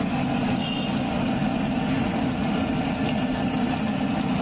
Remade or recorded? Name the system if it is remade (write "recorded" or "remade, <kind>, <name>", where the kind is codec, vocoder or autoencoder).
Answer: recorded